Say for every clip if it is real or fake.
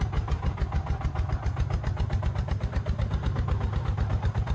real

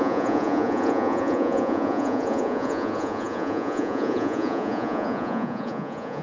fake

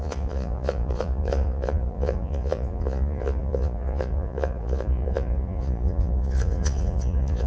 fake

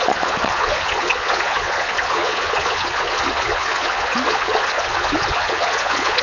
fake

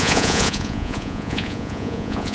fake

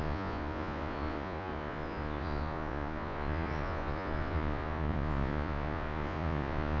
fake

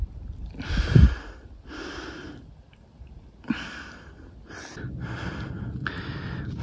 real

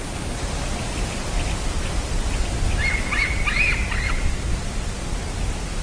real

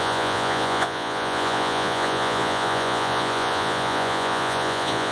fake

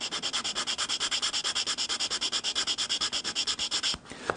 real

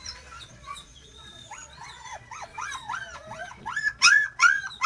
fake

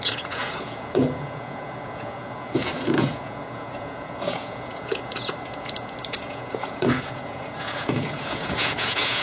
fake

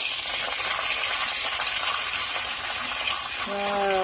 real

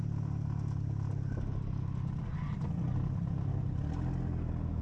real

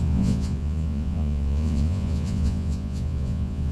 fake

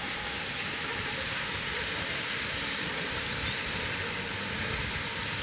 real